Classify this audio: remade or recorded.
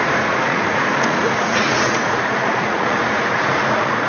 remade